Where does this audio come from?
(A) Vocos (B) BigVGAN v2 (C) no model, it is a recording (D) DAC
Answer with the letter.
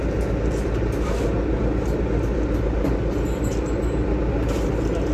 C